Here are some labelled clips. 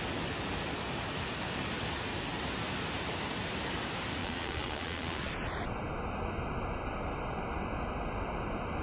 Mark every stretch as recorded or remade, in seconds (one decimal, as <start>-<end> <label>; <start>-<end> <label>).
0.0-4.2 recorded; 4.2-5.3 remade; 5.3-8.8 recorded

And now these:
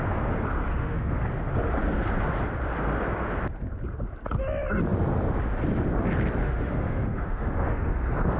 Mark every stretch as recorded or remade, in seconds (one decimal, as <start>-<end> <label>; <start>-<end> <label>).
0.0-0.7 recorded; 0.7-1.2 remade; 1.2-6.4 recorded; 6.4-7.9 remade; 7.9-8.4 recorded

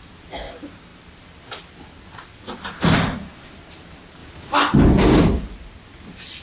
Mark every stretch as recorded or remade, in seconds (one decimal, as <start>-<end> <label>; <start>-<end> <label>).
0.0-4.2 remade; 4.2-5.0 recorded; 5.0-6.4 remade

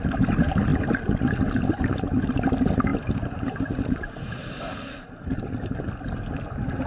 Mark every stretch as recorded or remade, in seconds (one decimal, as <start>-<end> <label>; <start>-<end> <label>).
0.0-6.9 recorded

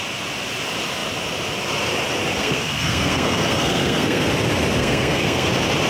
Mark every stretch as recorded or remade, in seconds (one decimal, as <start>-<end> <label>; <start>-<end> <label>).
0.0-2.4 recorded; 2.4-4.3 remade; 4.3-4.8 recorded; 4.8-5.5 remade; 5.5-5.9 recorded

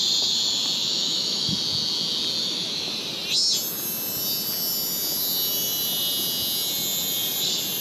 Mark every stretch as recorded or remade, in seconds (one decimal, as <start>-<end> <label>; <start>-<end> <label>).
0.0-0.9 recorded; 0.9-1.5 remade; 1.5-2.4 recorded; 2.4-2.9 remade; 2.9-7.8 recorded